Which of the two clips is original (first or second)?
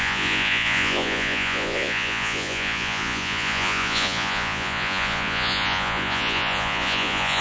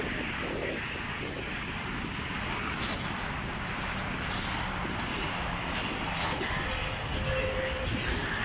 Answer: second